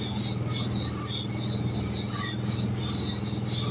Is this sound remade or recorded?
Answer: recorded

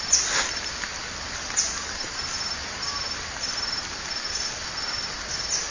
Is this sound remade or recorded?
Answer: recorded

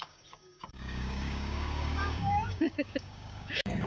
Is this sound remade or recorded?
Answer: remade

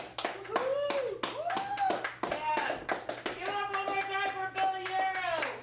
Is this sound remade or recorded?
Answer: recorded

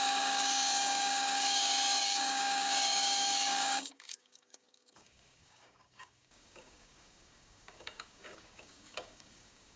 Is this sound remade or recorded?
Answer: remade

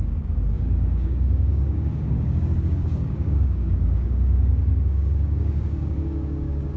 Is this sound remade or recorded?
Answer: remade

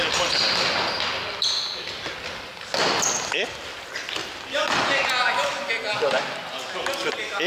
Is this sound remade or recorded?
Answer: recorded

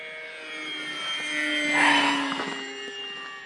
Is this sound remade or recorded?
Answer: recorded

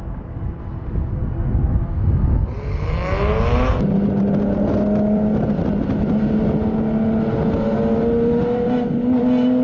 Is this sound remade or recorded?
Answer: recorded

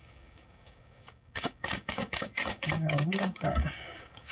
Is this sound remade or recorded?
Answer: remade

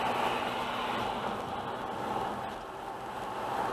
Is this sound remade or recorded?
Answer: recorded